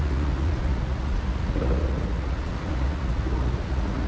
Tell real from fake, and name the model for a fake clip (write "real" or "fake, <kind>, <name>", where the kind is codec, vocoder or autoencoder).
fake, vocoder, Vocos